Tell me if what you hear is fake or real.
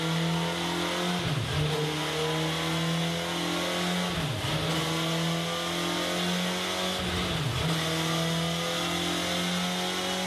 real